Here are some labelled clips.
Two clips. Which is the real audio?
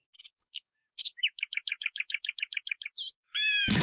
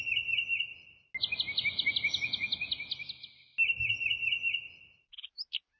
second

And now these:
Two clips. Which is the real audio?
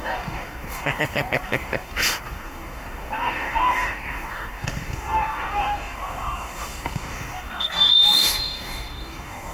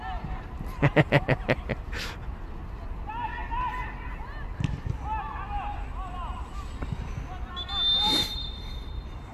second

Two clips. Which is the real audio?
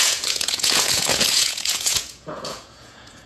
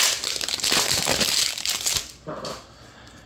second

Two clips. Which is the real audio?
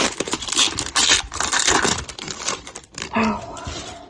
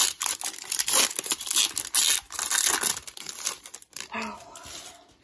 second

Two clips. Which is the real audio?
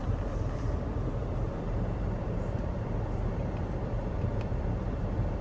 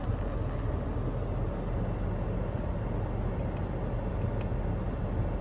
second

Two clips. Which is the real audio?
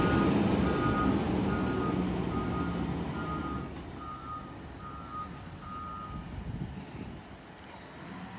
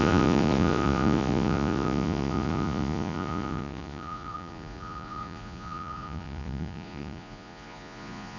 first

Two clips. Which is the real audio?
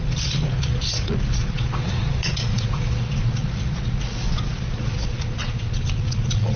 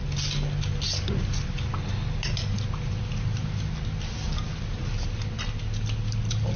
second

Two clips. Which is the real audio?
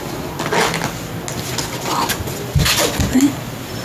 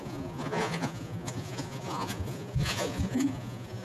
first